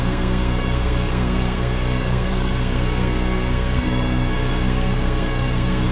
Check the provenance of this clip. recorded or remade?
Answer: remade